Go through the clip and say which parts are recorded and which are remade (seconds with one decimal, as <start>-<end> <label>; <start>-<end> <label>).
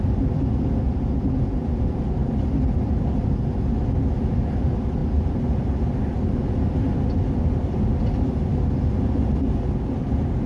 0.0-10.5 recorded